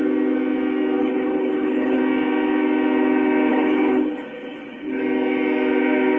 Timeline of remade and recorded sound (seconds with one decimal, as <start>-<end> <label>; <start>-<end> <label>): 0.0-1.0 recorded; 1.0-2.0 remade; 2.0-3.5 recorded; 3.5-5.0 remade; 5.0-6.2 recorded